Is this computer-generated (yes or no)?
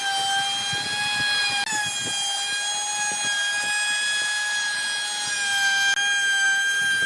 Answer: no